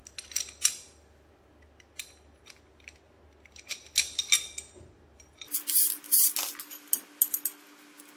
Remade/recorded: recorded